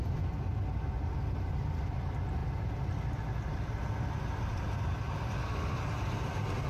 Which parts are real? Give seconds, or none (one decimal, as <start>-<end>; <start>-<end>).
0.0-6.7